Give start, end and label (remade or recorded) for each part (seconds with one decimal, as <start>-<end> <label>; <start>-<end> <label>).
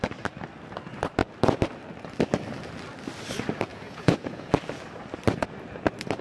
0.0-3.7 recorded; 3.7-4.5 remade; 4.5-6.2 recorded